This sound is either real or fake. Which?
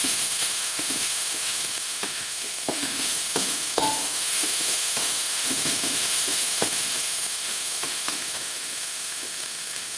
fake